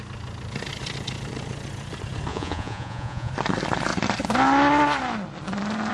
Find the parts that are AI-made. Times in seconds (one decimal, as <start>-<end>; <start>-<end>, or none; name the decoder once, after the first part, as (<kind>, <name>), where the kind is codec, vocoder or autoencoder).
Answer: 2.3-3.3 (vocoder, Vocos)